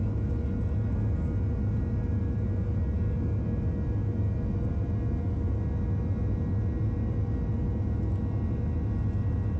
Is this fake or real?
real